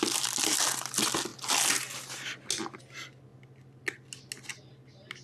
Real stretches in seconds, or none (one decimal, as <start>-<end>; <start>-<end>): 0.0-5.2